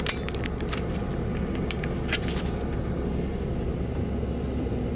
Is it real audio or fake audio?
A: real